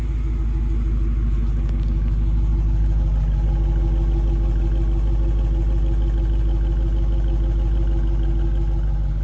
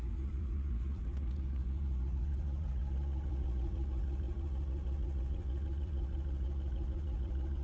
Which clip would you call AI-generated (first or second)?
second